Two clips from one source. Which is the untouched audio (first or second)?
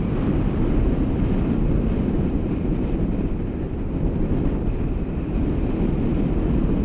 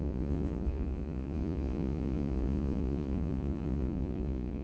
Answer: first